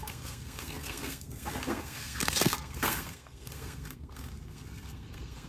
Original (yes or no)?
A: no